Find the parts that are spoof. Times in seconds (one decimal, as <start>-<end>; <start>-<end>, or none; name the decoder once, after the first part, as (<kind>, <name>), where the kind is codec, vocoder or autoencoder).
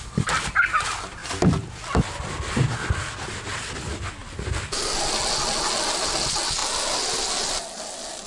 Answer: none